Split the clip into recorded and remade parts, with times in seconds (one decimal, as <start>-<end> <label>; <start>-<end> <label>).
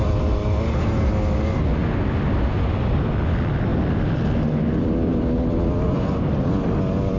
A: 0.0-7.2 recorded